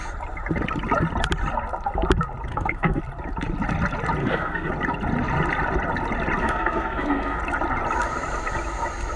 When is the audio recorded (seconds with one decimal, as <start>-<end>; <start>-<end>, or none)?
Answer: 0.0-2.5; 3.0-4.2; 4.7-6.4; 7.4-9.2